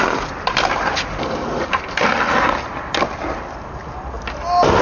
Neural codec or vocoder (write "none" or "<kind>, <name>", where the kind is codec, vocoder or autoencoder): none